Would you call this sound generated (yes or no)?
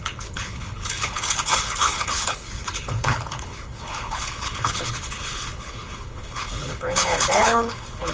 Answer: yes